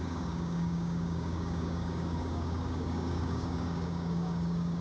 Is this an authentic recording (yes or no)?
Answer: no